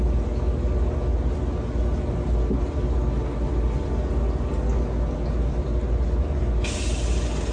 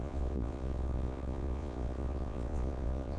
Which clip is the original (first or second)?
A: first